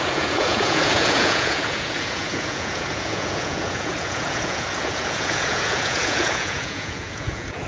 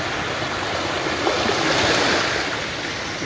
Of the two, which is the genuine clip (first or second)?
second